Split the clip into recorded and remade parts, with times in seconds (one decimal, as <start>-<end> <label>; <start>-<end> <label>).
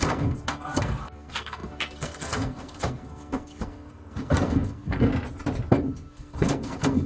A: 0.0-5.1 remade; 5.1-5.7 recorded; 5.7-7.1 remade